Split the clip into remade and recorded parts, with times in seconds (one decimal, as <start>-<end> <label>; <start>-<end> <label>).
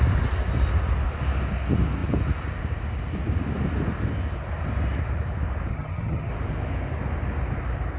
0.0-5.7 recorded; 5.7-6.3 remade; 6.3-8.0 recorded